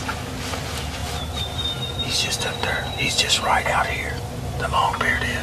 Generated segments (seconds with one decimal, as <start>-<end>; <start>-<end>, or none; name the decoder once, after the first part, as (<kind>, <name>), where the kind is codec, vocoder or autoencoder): none